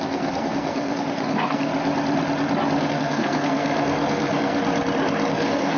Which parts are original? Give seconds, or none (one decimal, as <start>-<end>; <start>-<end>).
1.7-2.8; 4.6-5.3